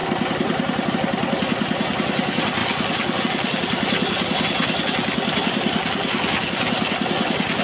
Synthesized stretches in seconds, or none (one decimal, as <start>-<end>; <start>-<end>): none